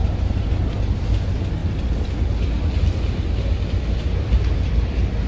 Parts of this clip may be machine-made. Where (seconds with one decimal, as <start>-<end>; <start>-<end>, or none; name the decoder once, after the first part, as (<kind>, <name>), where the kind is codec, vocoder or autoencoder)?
none